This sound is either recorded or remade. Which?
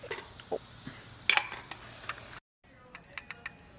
recorded